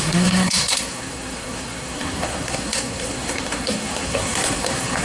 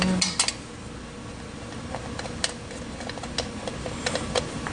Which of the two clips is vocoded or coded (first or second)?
first